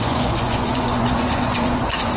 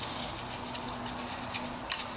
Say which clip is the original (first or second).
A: second